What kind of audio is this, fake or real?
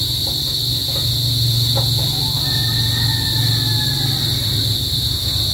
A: real